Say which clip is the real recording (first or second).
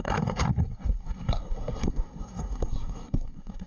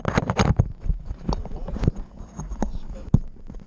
second